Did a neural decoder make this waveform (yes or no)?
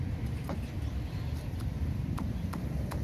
no